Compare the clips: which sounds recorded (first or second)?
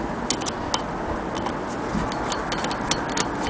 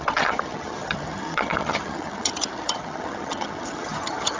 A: first